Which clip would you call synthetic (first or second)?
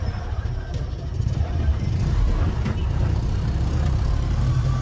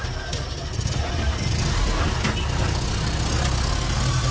first